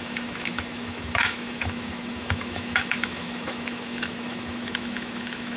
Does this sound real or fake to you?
fake